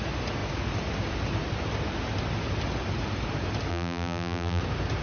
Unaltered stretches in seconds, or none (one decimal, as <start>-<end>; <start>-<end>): 0.0-3.7; 4.6-5.0